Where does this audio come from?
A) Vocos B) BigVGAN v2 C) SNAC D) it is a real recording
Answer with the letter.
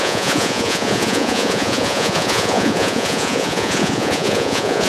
A